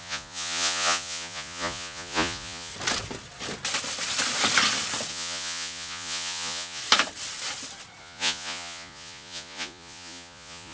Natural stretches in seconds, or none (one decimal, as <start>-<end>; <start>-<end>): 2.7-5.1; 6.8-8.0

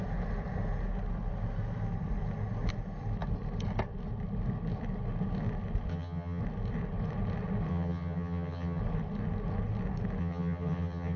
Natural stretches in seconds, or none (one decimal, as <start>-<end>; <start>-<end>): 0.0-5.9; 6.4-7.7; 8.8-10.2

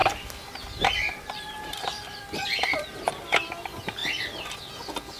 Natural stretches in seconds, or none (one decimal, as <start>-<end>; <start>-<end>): 3.1-4.0; 4.7-5.2

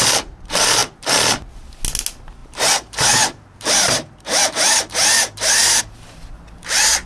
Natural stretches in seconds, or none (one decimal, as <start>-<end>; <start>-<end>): 0.0-2.4; 5.8-7.1

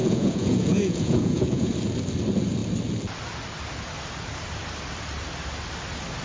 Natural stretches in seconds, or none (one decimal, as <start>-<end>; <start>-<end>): 1.7-6.2